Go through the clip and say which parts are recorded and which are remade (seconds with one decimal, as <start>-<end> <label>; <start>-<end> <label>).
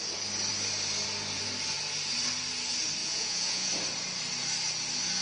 0.0-3.0 recorded; 3.0-3.7 remade; 3.7-5.2 recorded